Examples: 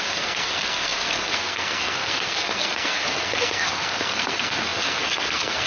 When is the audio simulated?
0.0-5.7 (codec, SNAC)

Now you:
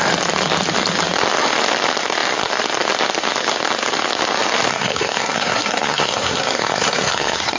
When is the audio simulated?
4.7-7.6 (codec, SNAC)

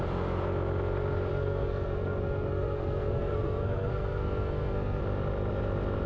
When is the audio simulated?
1.3-5.0 (codec, SNAC)

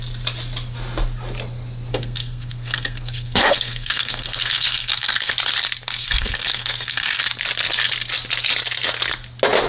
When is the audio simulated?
1.9-5.3 (codec, SNAC); 6.0-7.2